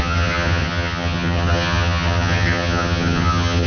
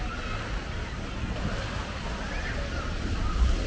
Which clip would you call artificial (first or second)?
first